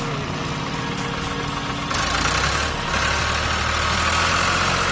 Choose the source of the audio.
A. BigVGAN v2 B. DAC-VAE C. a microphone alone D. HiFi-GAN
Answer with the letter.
C